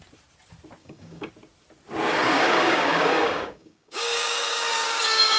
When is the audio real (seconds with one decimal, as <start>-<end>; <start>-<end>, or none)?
0.0-0.8; 1.3-2.1